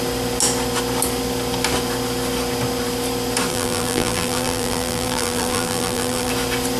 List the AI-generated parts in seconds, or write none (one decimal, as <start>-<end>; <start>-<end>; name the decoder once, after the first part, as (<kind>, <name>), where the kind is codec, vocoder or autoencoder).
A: 3.5-6.3 (vocoder, BigVGAN v2)